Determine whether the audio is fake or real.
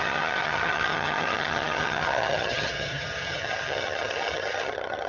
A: fake